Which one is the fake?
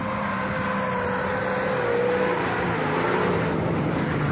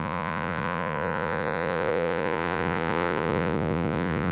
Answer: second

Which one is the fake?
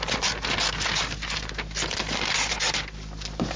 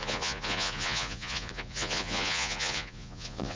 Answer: second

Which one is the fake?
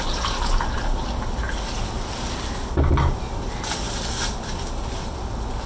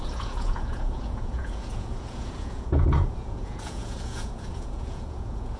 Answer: second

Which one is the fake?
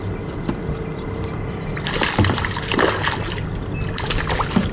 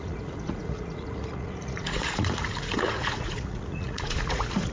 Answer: second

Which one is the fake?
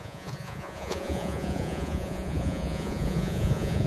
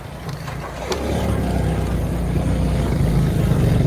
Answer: first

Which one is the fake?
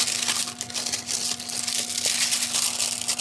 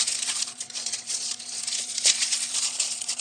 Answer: second